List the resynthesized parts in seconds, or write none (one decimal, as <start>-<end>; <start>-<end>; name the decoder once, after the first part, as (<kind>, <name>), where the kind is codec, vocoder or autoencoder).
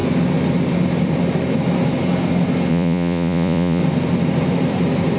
2.7-3.8 (vocoder, Vocos)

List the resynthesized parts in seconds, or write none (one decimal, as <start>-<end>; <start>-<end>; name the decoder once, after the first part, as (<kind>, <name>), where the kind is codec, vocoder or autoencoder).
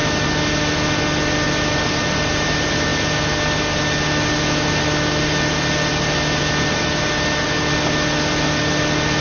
none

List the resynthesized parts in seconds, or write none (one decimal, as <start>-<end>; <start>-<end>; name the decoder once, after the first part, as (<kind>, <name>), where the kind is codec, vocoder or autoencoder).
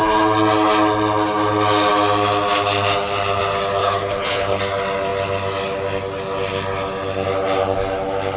3.8-4.6 (codec, HILCodec)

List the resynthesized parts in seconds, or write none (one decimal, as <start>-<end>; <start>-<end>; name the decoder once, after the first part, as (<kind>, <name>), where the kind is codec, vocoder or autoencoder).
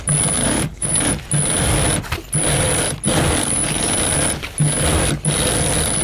0.4-1.1 (codec, DAC); 3.4-3.9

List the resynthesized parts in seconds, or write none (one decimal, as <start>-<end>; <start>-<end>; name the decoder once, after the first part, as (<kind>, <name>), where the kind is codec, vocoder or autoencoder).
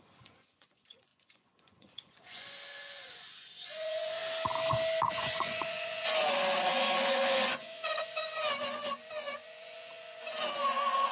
0.0-4.2 (vocoder, Vocos); 5.1-11.1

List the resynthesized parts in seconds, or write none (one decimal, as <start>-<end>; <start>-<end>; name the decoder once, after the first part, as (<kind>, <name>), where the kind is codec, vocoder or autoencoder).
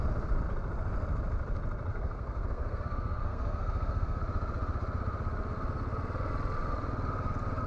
1.9-4.2 (codec, SNAC)